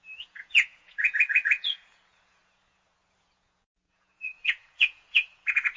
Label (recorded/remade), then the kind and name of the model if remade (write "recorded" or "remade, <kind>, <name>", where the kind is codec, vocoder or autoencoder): remade, vocoder, Vocos